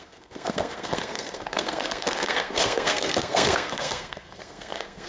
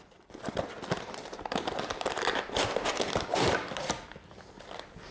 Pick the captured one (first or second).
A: second